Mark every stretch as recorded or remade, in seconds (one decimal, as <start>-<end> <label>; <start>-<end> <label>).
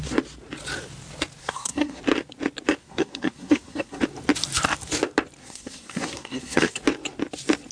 0.0-1.4 recorded; 1.4-2.0 remade; 2.0-2.8 recorded; 2.8-4.0 remade; 4.0-5.4 recorded; 5.4-6.8 remade; 6.8-7.7 recorded